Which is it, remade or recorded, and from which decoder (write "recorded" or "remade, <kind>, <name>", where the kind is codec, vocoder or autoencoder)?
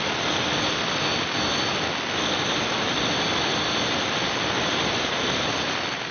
recorded